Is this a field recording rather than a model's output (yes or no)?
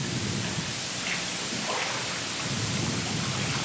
yes